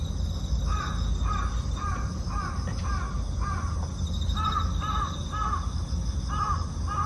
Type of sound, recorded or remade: recorded